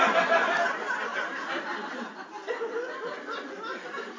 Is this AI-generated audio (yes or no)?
no